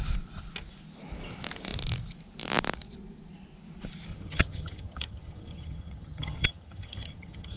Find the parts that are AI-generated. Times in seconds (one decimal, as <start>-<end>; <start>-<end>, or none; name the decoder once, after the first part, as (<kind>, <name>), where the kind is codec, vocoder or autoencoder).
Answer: 4.1-7.6 (vocoder, HiFi-GAN)